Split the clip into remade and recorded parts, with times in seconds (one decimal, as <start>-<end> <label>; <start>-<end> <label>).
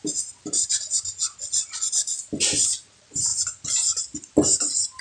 0.0-5.0 recorded